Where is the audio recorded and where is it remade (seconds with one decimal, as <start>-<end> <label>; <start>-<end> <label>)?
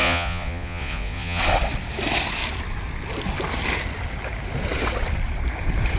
0.0-1.4 remade; 1.4-6.0 recorded